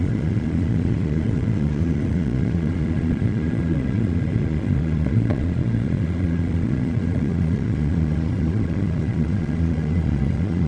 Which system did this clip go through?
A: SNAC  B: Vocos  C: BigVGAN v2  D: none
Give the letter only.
B